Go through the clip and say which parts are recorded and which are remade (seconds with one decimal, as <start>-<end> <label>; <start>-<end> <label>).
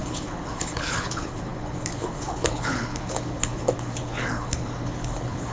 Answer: 0.0-5.5 remade